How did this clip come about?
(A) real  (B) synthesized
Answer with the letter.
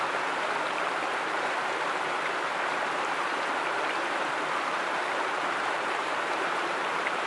B